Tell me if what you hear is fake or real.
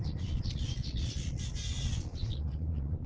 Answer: fake